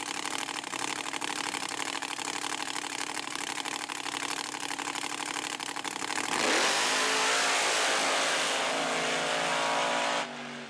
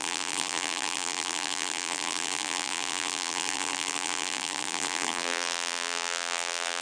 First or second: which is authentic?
first